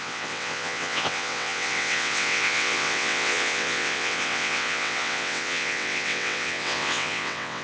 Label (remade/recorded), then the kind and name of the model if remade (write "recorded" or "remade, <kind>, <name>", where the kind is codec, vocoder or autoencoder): remade, vocoder, WaveNeXt